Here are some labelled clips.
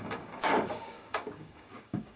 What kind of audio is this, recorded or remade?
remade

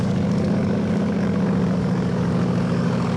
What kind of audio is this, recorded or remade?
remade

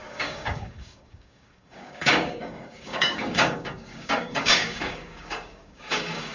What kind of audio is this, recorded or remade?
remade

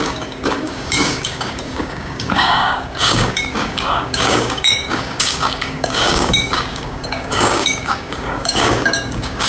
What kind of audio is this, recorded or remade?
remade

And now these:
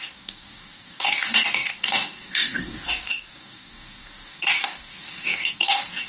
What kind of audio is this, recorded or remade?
remade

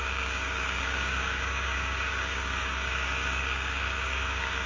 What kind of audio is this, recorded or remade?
remade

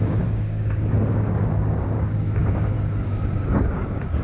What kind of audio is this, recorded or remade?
remade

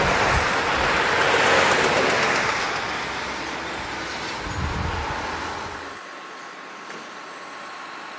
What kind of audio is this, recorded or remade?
recorded